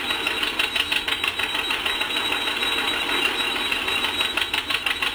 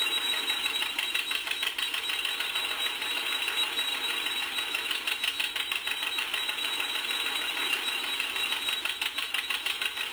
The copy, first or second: second